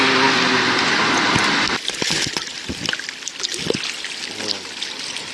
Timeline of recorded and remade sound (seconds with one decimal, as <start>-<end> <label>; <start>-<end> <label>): 0.0-5.3 recorded